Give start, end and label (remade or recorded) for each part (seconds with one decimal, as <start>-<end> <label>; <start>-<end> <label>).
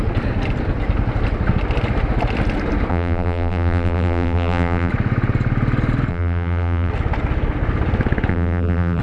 0.0-2.9 recorded; 2.9-4.9 remade; 4.9-6.1 recorded; 6.1-6.9 remade; 6.9-8.3 recorded; 8.3-9.0 remade